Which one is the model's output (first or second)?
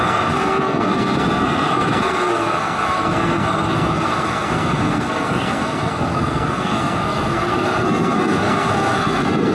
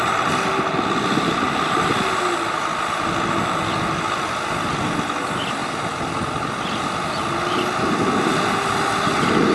first